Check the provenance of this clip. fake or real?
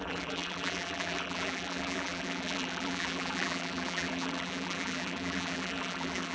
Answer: fake